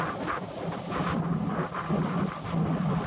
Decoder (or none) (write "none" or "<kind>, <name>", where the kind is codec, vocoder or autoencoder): none